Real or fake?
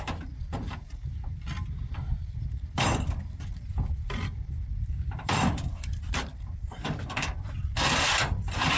fake